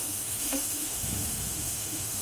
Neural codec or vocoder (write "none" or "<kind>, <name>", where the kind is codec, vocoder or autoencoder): autoencoder, DAC-VAE